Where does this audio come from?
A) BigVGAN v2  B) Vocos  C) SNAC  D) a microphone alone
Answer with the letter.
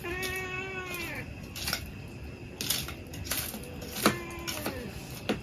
D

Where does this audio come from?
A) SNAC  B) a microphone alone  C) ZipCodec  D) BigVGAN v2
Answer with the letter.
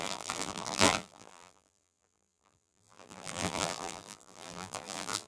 D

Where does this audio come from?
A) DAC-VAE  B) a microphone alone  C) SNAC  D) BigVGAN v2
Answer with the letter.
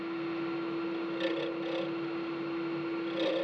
B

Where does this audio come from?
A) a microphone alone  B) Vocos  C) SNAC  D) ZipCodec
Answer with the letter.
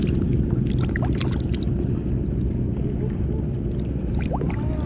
A